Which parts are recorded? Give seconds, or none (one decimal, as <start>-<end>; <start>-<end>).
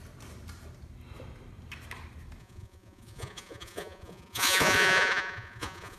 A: 0.0-2.4